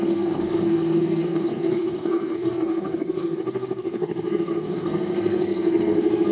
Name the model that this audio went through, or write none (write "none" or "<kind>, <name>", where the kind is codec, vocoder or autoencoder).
codec, SNAC